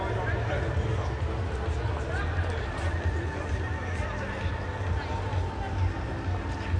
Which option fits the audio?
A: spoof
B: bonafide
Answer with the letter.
B